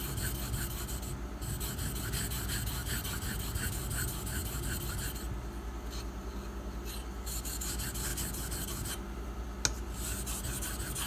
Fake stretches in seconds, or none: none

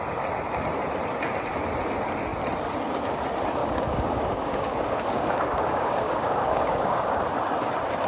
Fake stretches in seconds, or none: 3.6-7.2 (codec, DAC)